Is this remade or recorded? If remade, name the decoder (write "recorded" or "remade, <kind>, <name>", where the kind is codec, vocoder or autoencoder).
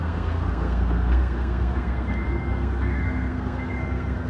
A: remade, codec, SNAC